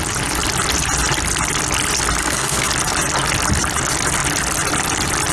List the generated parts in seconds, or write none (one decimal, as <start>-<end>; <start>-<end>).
2.2-2.7